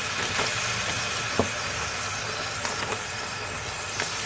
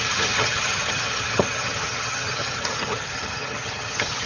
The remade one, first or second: second